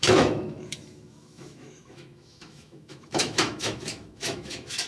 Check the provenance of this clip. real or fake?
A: fake